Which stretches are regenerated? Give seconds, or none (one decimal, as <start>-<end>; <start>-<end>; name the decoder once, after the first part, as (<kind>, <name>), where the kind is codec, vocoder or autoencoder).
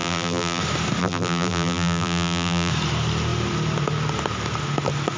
0.0-0.6 (vocoder, BigVGAN v2); 1.0-2.7